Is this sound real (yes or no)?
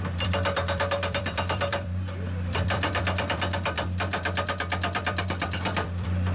no